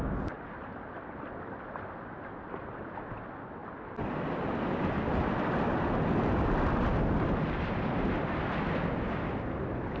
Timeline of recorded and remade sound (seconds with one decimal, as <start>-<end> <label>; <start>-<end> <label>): 0.0-10.0 recorded